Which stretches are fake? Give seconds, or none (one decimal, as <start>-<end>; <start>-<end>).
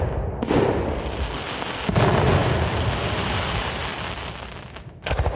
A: none